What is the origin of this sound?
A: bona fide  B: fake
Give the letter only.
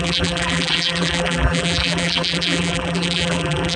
B